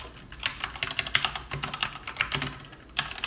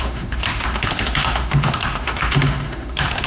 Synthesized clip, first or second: second